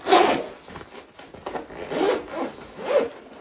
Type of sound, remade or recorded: recorded